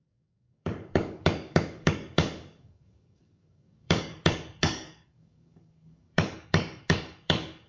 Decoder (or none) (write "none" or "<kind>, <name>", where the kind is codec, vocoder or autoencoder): codec, DAC